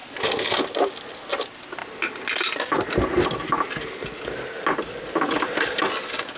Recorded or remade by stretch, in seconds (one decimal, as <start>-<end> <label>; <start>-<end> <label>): 0.0-6.4 recorded